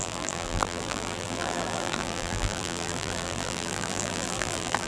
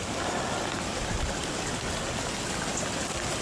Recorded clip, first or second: second